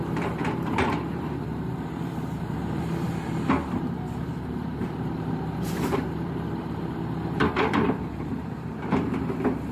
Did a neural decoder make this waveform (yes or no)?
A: yes